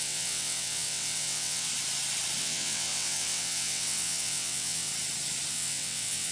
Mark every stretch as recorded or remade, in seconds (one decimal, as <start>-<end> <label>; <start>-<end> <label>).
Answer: 0.0-1.7 remade; 1.7-2.4 recorded; 2.4-4.9 remade; 4.9-5.5 recorded; 5.5-6.3 remade